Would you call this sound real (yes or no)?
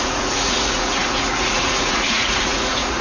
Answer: no